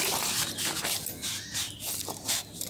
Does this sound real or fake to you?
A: real